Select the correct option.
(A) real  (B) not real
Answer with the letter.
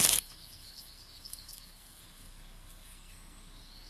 B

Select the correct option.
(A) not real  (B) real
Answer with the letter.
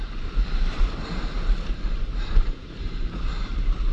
A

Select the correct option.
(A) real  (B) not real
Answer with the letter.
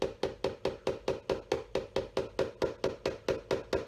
A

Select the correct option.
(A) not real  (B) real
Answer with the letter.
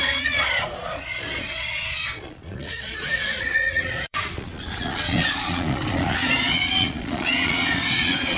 A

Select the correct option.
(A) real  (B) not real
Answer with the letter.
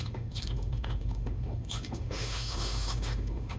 B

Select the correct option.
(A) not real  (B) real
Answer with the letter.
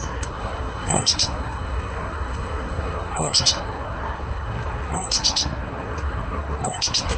A